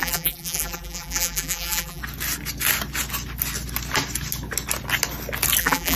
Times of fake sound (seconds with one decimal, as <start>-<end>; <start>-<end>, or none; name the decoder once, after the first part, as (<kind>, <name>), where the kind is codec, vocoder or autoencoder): 0.0-2.0 (vocoder, BigVGAN v2); 5.6-6.0